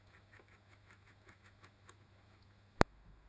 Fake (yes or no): yes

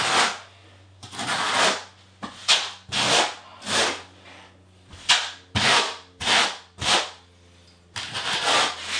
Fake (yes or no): no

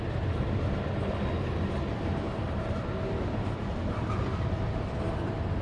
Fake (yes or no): no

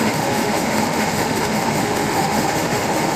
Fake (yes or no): yes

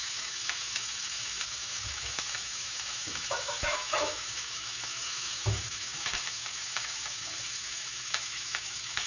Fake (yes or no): yes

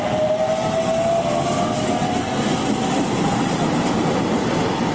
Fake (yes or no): no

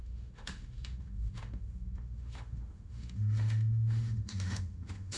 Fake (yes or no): yes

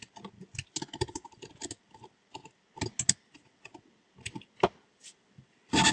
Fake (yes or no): no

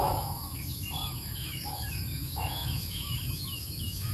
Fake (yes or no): yes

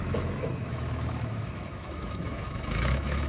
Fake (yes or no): yes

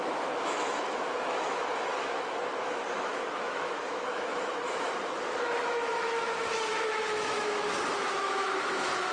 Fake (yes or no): yes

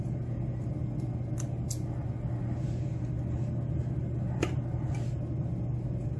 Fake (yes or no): no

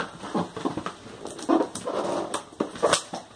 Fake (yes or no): no